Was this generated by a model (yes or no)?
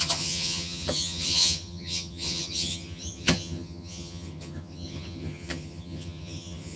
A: yes